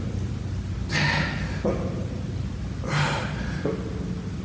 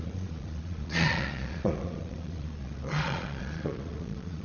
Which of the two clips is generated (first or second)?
second